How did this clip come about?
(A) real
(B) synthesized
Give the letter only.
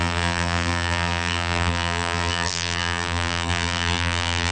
B